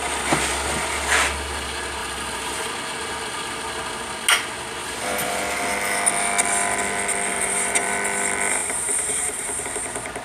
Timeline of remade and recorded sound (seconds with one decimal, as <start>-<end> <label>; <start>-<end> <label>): 0.0-2.0 recorded; 2.0-2.7 remade; 2.7-4.8 recorded; 4.8-5.4 remade; 5.4-7.3 recorded; 7.3-7.9 remade; 7.9-8.6 recorded; 8.6-9.6 remade; 9.6-10.2 recorded